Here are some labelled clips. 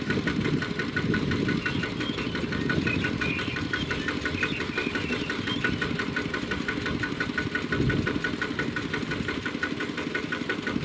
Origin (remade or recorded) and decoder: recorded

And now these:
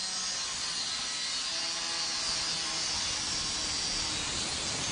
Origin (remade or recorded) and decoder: recorded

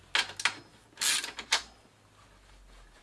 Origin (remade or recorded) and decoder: recorded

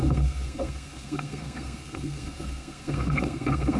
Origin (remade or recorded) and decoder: remade, codec, SNAC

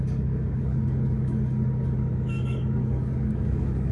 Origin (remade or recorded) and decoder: remade, codec, DAC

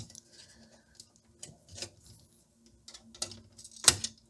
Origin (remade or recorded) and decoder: recorded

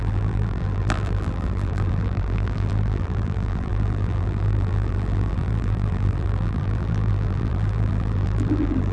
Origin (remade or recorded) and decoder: remade, vocoder, BigVGAN v2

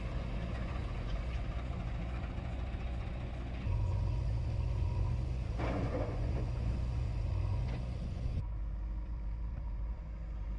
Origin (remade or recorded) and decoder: remade, vocoder, Vocos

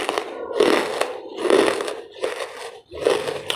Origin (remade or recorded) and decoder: recorded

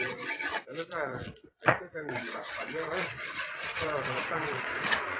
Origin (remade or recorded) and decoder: remade, vocoder, Vocos